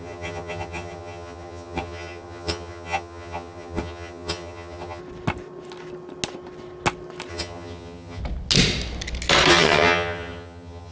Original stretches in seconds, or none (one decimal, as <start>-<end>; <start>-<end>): 5.0-7.3; 8.2-9.5